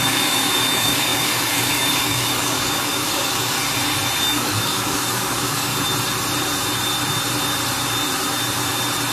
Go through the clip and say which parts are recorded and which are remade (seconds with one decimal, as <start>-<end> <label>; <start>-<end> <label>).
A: 0.0-3.6 remade; 3.6-4.2 recorded; 4.2-5.7 remade; 5.7-9.1 recorded